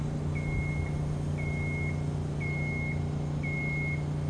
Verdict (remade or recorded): recorded